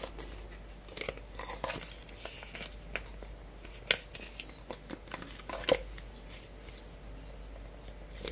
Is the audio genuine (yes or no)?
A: yes